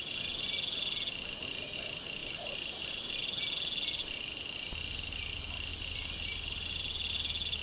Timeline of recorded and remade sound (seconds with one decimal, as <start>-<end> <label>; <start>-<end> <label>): 0.0-7.6 recorded